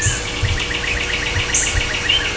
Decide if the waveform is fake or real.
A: real